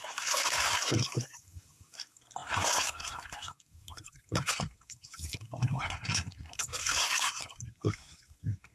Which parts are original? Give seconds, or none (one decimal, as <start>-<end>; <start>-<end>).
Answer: none